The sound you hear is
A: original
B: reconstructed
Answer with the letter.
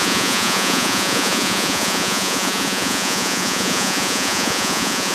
B